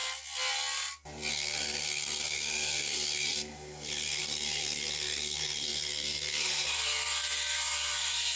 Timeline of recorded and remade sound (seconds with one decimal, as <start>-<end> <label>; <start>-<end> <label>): 0.0-1.3 recorded; 1.3-8.4 remade